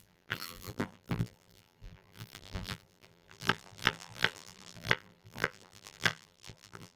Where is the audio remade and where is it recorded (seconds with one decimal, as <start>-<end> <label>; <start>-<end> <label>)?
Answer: 0.0-7.0 remade

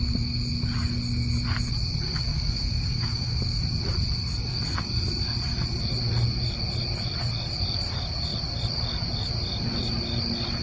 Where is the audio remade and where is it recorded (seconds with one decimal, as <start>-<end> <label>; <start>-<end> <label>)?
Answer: 0.0-2.3 recorded; 2.3-3.8 remade; 3.8-10.6 recorded

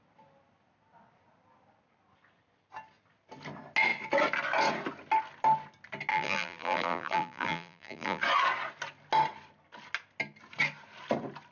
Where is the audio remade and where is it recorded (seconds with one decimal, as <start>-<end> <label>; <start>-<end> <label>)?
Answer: 0.0-6.1 recorded; 6.1-8.2 remade; 8.2-11.5 recorded

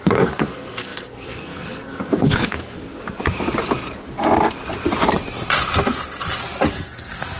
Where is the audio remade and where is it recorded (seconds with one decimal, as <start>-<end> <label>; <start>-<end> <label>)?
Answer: 0.0-3.0 remade; 3.0-6.7 recorded; 6.7-7.4 remade

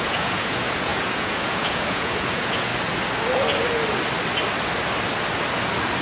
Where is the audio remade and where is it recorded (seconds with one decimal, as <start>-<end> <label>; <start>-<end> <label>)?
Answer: 0.0-2.7 remade; 2.7-6.0 recorded

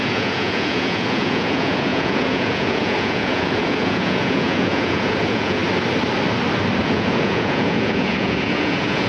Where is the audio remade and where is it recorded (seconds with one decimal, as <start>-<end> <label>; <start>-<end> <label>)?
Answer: 0.0-5.6 remade; 5.6-6.8 recorded; 6.8-9.1 remade

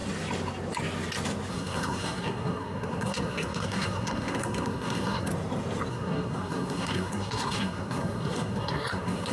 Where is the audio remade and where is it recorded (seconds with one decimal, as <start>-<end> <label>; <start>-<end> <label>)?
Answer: 0.0-1.5 recorded; 1.5-5.3 remade; 5.3-5.9 recorded; 5.9-9.3 remade